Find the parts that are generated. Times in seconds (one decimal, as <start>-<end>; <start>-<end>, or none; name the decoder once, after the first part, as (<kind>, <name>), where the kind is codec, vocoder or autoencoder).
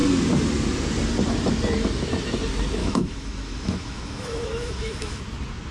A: 2.8-5.2 (autoencoder, DAC-VAE)